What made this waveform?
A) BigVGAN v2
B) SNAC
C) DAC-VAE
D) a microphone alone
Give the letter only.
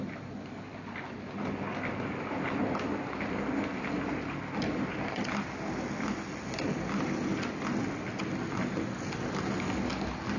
D